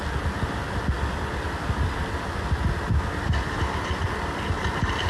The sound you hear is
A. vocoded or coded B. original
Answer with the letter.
B